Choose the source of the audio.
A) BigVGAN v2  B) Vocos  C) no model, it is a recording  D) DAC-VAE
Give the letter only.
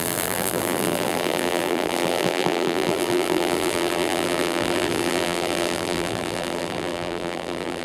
A